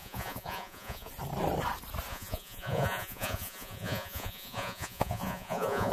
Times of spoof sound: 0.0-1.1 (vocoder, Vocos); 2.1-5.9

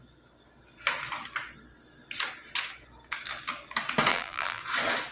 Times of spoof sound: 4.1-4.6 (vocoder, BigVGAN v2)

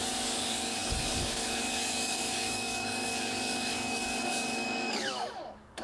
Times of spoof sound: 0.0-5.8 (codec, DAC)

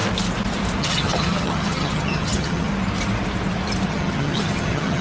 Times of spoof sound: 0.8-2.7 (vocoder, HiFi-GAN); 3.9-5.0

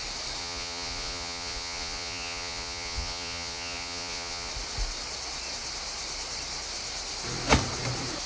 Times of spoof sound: 0.4-4.5 (vocoder, Vocos)

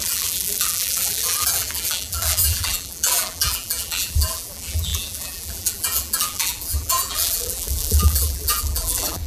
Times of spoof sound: 0.0-9.3 (vocoder, BigVGAN v2)